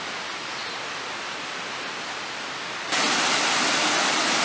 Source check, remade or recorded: recorded